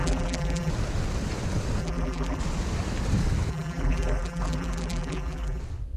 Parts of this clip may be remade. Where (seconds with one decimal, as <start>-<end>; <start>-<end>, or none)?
0.0-0.7; 1.8-2.4; 3.5-5.6